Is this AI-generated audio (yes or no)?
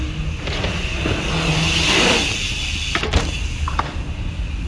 no